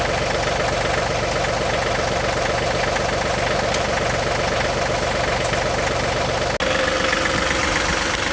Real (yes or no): yes